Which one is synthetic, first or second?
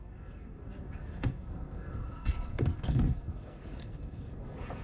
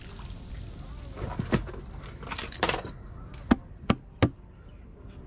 first